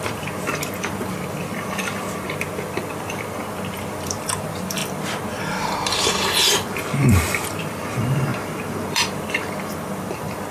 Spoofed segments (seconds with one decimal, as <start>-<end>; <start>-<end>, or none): 0.0-10.5